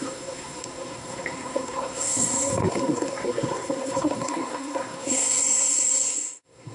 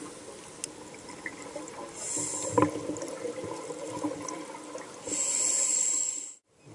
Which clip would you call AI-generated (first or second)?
first